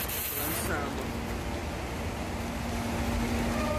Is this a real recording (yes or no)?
yes